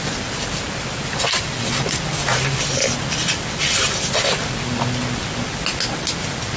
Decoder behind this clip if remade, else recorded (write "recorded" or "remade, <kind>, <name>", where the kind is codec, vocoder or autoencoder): recorded